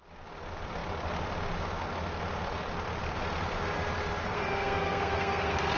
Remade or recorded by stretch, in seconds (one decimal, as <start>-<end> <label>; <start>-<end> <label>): 0.0-4.2 recorded; 4.2-5.8 remade